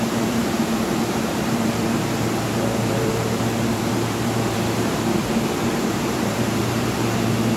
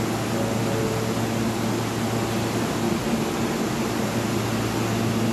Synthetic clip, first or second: first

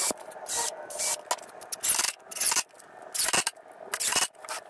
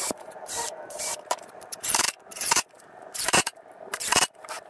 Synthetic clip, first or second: second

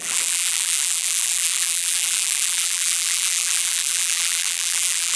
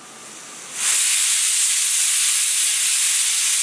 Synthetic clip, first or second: first